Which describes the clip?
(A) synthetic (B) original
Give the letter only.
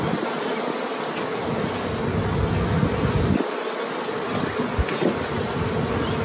B